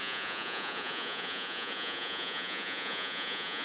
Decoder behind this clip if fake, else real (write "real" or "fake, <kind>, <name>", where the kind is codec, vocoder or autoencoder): fake, vocoder, Vocos